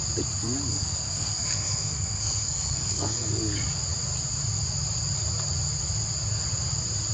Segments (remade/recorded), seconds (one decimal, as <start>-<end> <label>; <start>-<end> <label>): 0.0-0.7 recorded; 0.7-3.4 remade; 3.4-7.1 recorded